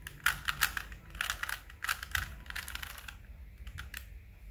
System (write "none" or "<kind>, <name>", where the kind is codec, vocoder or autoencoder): none